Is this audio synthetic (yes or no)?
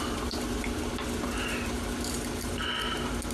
no